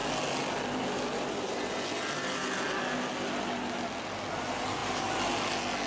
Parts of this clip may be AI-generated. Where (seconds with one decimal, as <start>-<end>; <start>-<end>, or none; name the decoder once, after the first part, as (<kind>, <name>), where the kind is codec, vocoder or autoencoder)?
none